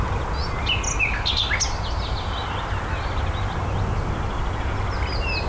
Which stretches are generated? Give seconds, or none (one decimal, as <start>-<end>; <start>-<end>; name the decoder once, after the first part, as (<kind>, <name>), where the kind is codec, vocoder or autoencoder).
none